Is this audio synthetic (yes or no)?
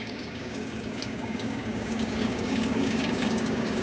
yes